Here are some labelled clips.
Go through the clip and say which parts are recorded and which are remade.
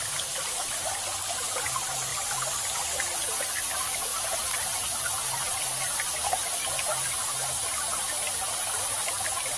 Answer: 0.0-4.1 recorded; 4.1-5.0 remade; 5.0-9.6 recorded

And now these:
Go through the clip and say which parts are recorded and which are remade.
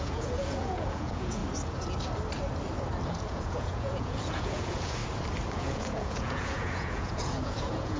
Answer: 0.0-1.4 remade; 1.4-3.2 recorded; 3.2-5.0 remade; 5.0-5.6 recorded; 5.6-8.0 remade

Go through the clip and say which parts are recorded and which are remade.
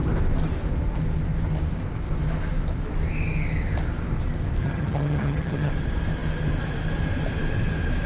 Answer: 0.0-4.6 recorded; 4.6-5.7 remade; 5.7-8.1 recorded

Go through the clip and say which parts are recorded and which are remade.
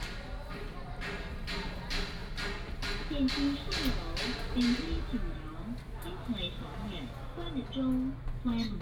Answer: 0.0-8.8 recorded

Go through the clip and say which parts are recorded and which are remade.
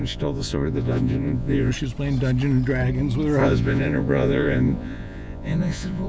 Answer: 0.0-1.7 remade; 1.7-3.4 recorded; 3.4-6.1 remade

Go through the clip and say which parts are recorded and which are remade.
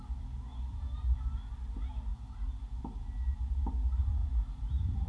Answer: 0.0-5.1 recorded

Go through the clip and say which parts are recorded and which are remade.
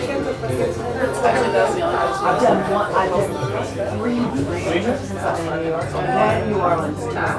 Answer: 0.0-1.5 recorded; 1.5-5.5 remade; 5.5-7.4 recorded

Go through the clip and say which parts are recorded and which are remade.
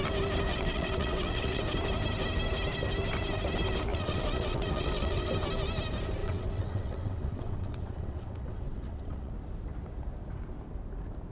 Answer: 0.0-0.5 recorded; 0.5-1.6 remade; 1.6-3.9 recorded; 3.9-5.3 remade; 5.3-6.2 recorded; 6.2-9.3 remade; 9.3-11.3 recorded